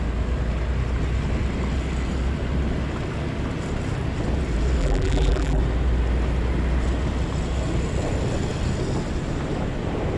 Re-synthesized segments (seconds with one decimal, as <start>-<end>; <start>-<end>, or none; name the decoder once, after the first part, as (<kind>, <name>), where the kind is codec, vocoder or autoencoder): 4.8-5.6 (vocoder, BigVGAN v2)